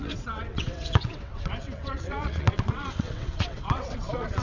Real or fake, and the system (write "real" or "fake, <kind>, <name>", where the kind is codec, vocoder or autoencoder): fake, vocoder, WaveNeXt